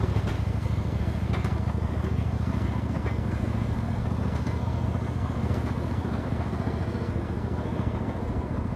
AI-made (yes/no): yes